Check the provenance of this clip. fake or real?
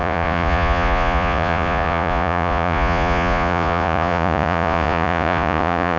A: fake